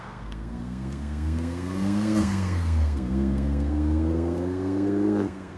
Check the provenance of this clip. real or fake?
fake